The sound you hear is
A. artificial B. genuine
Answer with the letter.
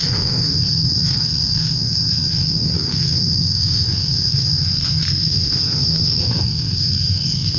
A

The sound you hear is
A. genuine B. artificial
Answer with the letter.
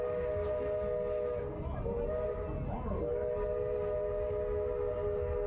A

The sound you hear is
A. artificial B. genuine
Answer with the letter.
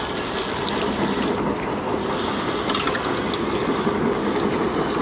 B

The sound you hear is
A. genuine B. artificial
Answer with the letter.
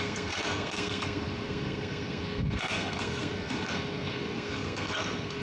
B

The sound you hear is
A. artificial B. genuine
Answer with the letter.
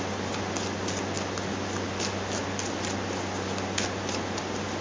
B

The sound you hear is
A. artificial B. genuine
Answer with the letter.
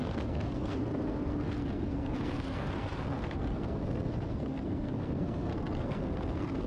A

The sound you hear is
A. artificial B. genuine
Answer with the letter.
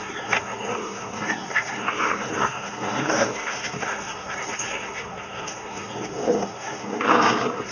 A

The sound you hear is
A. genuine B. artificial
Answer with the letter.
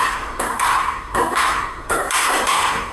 B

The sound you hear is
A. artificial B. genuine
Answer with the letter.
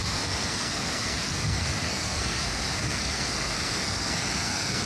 A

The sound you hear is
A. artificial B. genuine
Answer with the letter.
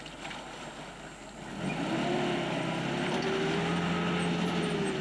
B